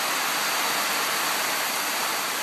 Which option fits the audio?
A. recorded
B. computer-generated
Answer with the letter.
A